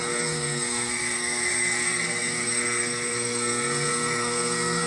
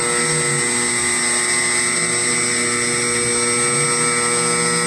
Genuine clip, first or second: second